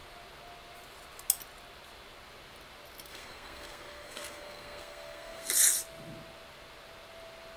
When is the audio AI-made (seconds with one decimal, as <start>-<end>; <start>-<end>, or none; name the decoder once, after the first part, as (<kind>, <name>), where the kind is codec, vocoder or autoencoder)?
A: 3.1-5.5 (codec, SNAC)